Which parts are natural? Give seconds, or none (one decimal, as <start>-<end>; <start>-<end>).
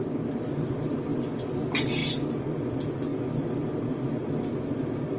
0.0-1.1; 1.6-5.2